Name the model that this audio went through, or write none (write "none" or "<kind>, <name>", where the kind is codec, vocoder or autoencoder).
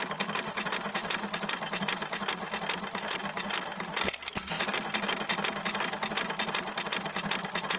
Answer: none